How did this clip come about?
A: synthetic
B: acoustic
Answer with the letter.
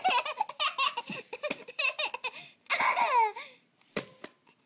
B